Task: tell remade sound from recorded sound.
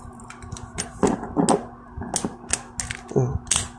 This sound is recorded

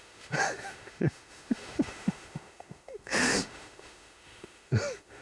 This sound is remade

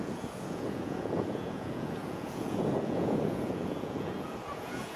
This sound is remade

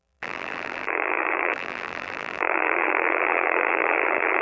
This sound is remade